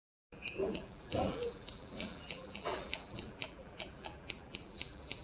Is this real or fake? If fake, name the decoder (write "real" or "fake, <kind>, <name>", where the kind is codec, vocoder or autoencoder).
fake, vocoder, BigVGAN v2